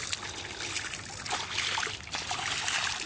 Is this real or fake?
real